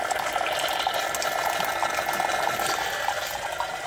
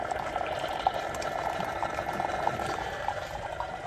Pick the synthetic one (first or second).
second